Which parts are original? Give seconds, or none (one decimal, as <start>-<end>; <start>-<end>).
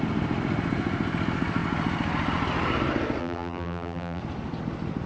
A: 0.0-3.2; 4.2-5.1